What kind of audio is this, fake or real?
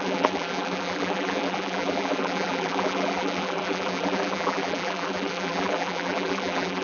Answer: fake